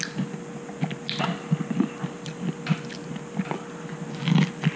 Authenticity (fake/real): real